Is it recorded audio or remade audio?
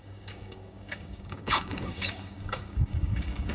remade